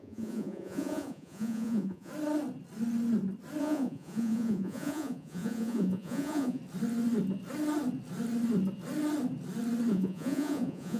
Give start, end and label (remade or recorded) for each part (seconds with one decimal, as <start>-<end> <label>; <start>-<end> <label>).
0.0-2.1 remade; 2.1-3.6 recorded; 3.6-6.6 remade; 6.6-9.9 recorded; 9.9-11.0 remade